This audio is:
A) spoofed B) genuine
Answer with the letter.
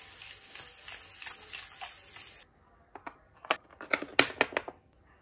B